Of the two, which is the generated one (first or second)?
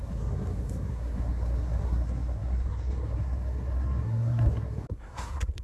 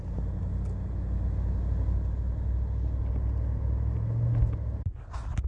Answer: first